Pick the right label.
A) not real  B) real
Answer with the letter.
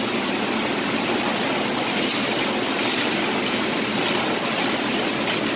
B